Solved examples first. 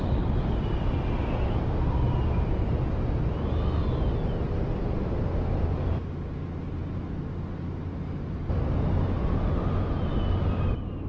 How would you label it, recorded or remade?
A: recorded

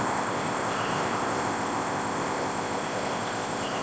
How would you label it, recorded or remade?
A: remade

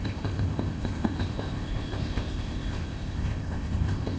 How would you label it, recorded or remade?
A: remade